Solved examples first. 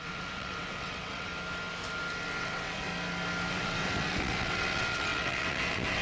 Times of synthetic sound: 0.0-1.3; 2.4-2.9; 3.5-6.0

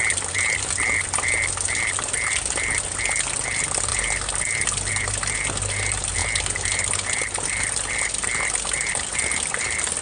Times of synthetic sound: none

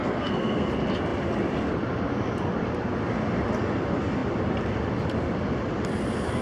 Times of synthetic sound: 0.0-0.7